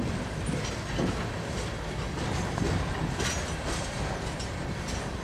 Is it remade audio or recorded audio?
recorded